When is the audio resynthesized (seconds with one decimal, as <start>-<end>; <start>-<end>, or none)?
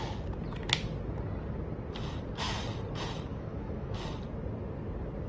3.3-4.0